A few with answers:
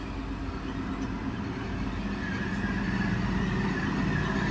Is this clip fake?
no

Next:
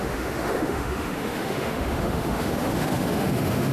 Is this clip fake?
yes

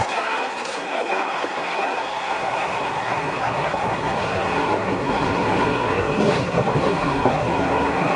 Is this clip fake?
yes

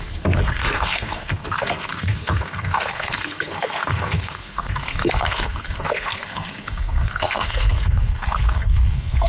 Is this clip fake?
yes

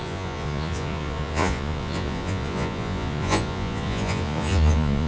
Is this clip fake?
yes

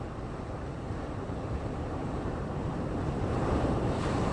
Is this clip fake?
yes